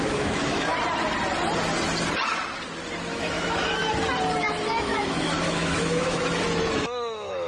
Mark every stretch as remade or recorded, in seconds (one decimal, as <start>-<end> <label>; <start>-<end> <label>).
0.0-0.7 remade; 0.7-3.1 recorded; 3.1-3.8 remade; 3.8-4.4 recorded; 4.4-7.5 remade